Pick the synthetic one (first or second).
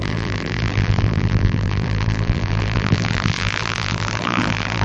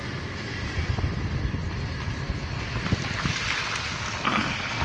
first